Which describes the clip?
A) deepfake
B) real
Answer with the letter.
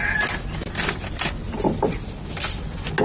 B